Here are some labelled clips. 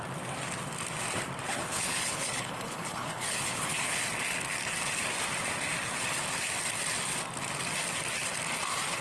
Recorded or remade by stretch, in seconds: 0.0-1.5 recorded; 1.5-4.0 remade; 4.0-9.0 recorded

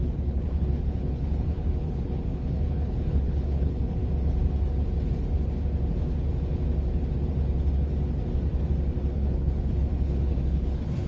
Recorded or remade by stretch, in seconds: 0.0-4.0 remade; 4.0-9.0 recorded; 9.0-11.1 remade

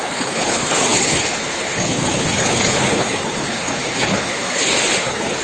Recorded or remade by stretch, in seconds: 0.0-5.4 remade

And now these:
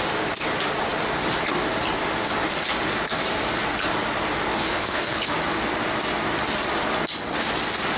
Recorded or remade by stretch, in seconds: 0.0-4.5 recorded; 4.5-5.3 remade; 5.3-8.0 recorded